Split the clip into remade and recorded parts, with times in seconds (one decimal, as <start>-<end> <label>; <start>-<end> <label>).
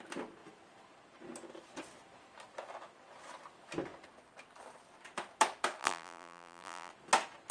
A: 0.0-5.8 recorded; 5.8-6.9 remade; 6.9-7.5 recorded